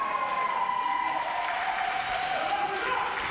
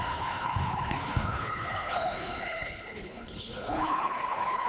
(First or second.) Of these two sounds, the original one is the first